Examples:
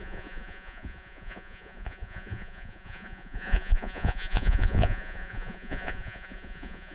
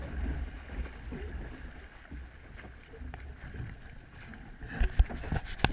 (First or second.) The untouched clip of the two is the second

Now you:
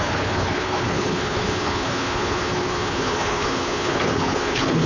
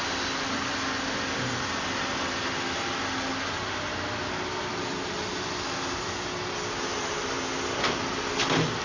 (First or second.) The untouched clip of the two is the second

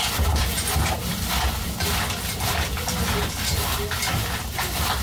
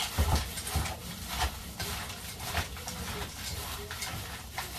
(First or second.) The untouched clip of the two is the first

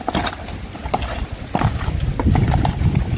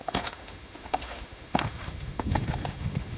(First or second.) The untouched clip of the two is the first